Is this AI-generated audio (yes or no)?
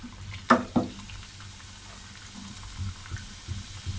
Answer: no